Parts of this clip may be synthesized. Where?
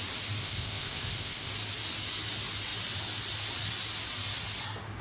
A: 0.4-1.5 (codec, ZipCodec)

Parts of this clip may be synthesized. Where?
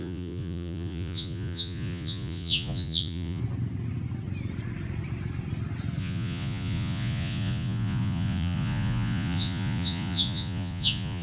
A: 0.0-3.4 (vocoder, Vocos); 6.0-11.2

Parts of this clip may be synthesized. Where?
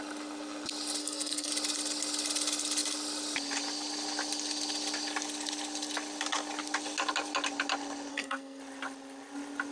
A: 1.0-1.5 (codec, SNAC); 8.1-8.6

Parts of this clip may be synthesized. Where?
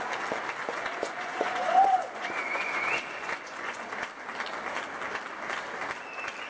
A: 0.6-3.9 (vocoder, Vocos)